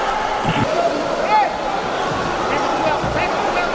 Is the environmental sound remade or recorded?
recorded